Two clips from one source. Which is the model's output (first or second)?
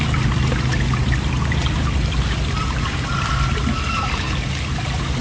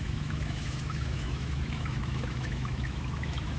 second